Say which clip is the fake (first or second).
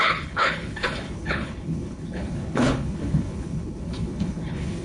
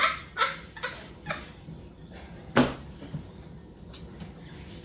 first